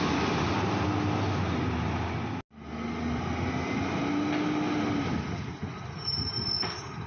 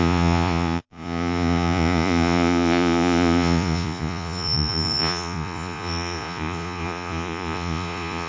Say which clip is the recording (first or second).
first